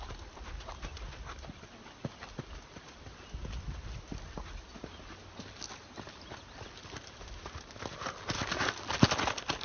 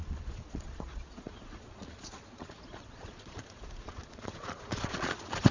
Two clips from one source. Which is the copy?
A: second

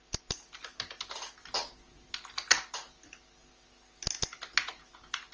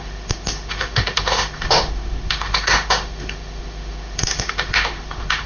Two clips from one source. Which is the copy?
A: second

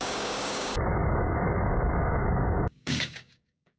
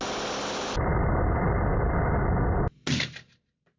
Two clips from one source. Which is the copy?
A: first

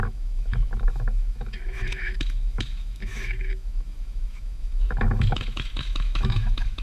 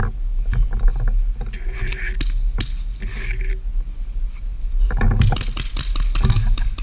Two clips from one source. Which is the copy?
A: first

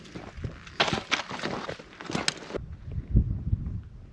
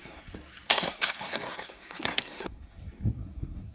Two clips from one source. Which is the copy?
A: second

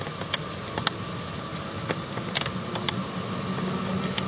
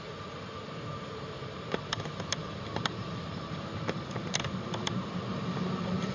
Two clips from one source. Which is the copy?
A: second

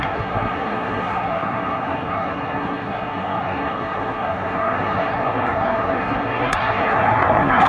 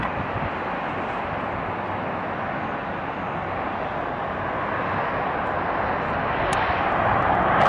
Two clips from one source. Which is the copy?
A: first